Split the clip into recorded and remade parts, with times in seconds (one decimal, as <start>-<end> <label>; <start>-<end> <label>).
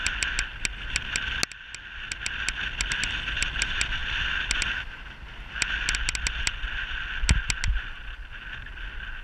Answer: 0.0-9.2 recorded